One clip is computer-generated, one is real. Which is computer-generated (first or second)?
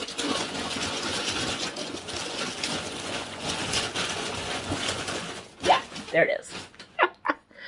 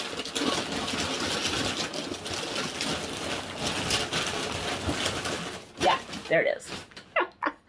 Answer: first